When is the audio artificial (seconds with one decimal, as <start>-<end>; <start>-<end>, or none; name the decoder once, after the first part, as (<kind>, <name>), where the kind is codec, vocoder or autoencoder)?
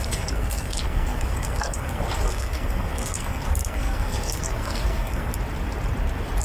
0.0-5.3 (codec, SNAC)